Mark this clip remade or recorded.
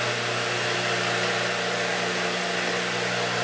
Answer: recorded